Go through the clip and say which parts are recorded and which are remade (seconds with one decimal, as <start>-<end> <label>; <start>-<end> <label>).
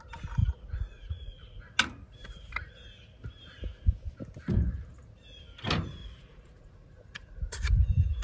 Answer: 0.0-0.4 recorded; 0.4-1.6 remade; 1.6-6.0 recorded; 6.0-8.2 remade